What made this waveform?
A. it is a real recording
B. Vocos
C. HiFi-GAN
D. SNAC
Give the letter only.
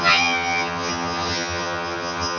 C